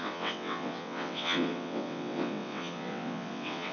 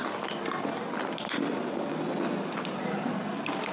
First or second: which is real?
second